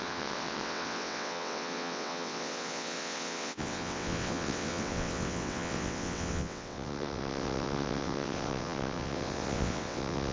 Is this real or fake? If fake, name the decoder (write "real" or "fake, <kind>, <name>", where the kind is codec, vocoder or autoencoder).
fake, vocoder, WaveNeXt